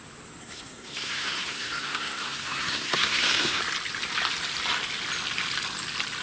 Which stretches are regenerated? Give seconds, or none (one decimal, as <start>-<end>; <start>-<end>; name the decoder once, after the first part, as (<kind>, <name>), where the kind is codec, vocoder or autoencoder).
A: 0.4-3.6 (codec, SNAC)